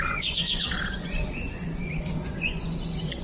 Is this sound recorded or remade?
remade